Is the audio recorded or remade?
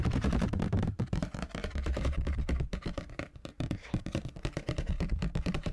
remade